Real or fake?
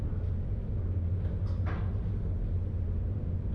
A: real